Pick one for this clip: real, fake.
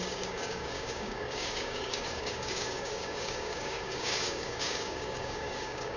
fake